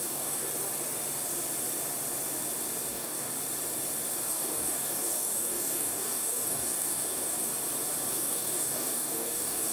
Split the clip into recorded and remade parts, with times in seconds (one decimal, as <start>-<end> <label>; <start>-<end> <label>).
0.0-0.4 remade; 0.4-2.9 recorded; 2.9-3.3 remade; 3.3-4.3 recorded; 4.3-7.5 remade; 7.5-8.1 recorded; 8.1-9.7 remade